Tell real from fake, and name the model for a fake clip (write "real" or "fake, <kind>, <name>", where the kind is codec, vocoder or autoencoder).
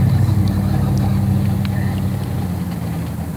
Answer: real